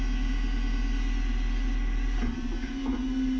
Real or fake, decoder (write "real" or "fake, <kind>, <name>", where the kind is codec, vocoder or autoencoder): real